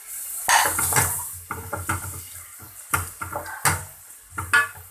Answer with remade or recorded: recorded